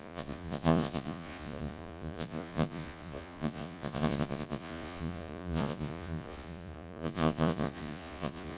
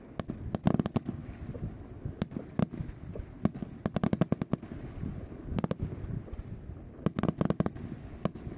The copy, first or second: first